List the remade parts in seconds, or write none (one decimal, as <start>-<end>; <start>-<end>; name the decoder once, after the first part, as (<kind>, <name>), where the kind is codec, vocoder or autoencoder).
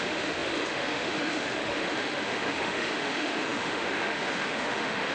0.0-5.1 (autoencoder, DAC-VAE)